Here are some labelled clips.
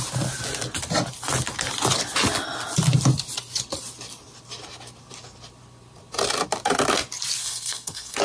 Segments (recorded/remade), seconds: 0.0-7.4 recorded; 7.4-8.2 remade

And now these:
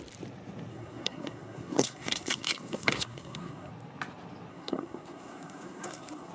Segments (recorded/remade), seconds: 0.0-0.7 recorded; 0.7-3.7 remade; 3.7-4.5 recorded; 4.5-6.3 remade

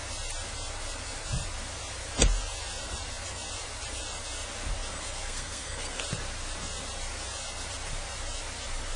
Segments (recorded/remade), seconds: 0.0-4.9 recorded; 4.9-6.0 remade; 6.0-9.0 recorded

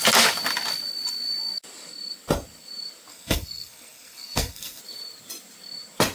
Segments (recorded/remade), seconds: 0.0-3.1 recorded; 3.1-4.8 remade; 4.8-6.1 recorded

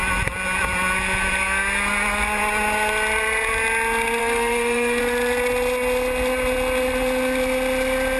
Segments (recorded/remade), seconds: 0.0-4.2 recorded; 4.2-5.0 remade; 5.0-8.2 recorded

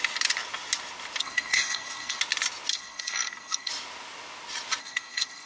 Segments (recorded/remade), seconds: 0.0-1.2 recorded; 1.2-2.2 remade; 2.2-2.7 recorded; 2.7-3.7 remade; 3.7-4.8 recorded; 4.8-5.5 remade

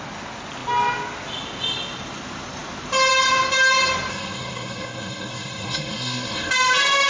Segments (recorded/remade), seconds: 0.0-4.1 recorded; 4.1-6.5 remade; 6.5-7.1 recorded